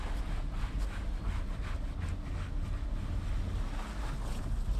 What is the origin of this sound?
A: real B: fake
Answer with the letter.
A